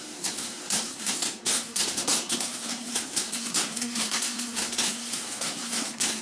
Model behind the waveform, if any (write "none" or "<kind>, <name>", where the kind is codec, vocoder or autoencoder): codec, SNAC